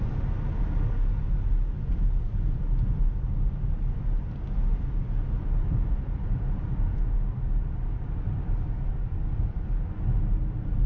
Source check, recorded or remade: recorded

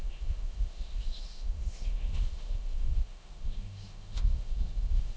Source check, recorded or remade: remade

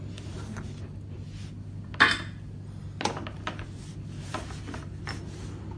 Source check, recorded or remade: recorded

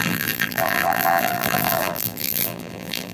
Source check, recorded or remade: remade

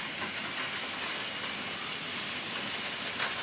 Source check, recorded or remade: recorded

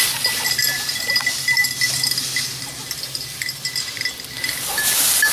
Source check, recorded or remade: recorded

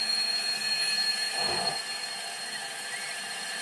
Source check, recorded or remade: remade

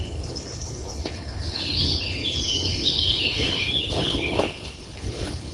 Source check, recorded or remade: remade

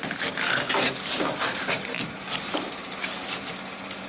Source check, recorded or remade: recorded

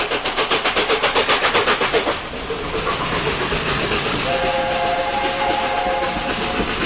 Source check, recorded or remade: recorded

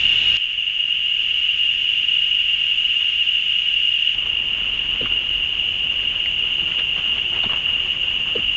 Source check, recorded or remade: recorded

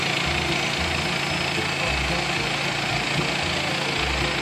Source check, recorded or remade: recorded